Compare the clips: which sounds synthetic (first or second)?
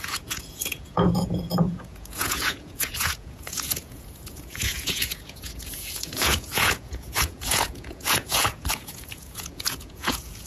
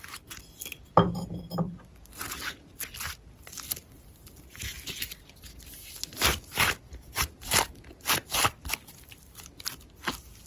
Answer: first